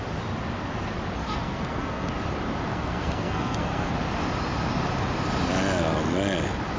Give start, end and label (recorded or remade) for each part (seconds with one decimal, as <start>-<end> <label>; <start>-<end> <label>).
0.0-1.2 recorded; 1.2-2.1 remade; 2.1-2.7 recorded; 2.7-3.9 remade; 3.9-6.8 recorded